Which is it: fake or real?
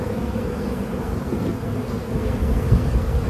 fake